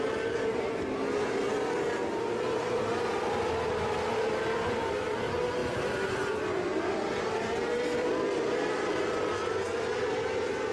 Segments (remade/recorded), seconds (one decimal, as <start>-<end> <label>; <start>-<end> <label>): 0.0-5.6 recorded; 5.6-9.5 remade; 9.5-10.7 recorded